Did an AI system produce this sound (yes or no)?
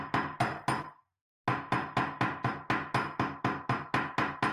no